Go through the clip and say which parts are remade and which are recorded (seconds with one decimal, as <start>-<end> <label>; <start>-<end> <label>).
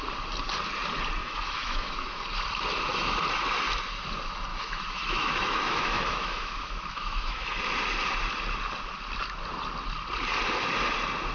0.0-1.2 recorded; 1.2-2.2 remade; 2.2-4.5 recorded; 4.5-7.6 remade; 7.6-11.3 recorded